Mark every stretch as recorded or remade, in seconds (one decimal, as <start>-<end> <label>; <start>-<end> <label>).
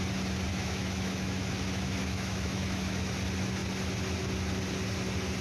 0.0-0.5 recorded; 0.5-3.1 remade; 3.1-5.4 recorded